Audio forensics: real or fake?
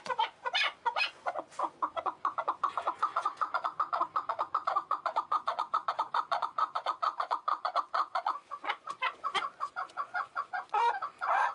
fake